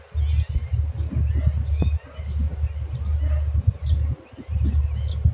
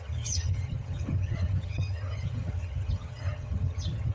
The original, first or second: first